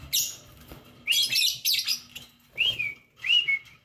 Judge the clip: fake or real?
real